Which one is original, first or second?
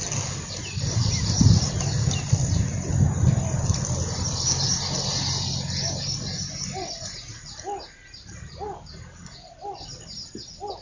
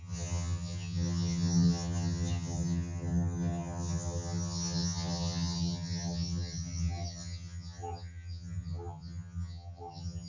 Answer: first